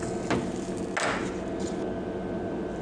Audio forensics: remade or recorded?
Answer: recorded